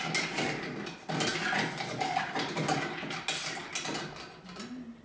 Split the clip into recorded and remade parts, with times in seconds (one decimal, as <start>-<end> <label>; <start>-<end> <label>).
0.0-5.0 recorded